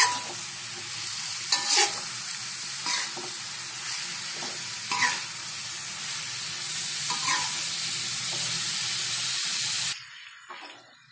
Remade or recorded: recorded